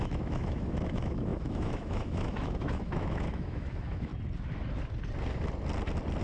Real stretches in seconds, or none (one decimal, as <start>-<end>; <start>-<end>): 4.1-6.2